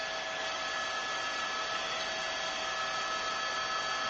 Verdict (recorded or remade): recorded